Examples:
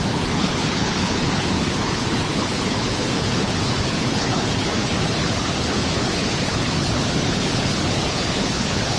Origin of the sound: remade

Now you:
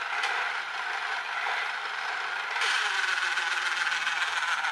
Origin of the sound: recorded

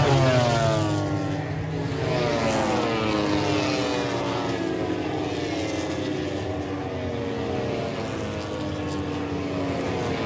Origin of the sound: recorded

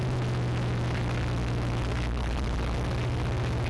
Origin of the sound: recorded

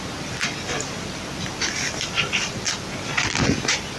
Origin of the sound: recorded